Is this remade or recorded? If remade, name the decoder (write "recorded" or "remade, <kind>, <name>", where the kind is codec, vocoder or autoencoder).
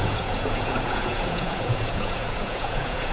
remade, vocoder, Vocos